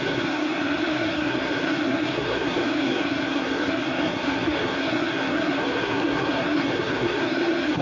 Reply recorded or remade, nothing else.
remade